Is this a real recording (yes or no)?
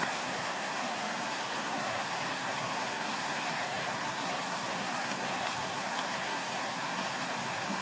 no